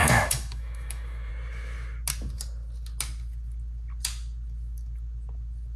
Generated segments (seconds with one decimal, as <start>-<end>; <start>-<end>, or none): 0.0-1.3